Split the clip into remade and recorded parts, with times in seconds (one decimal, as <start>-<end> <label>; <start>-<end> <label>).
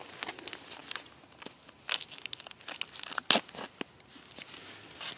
0.0-5.2 recorded